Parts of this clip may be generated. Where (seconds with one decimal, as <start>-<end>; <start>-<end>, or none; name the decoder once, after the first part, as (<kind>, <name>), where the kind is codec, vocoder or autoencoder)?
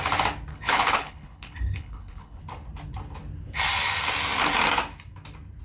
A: 0.5-2.4 (codec, HILCodec)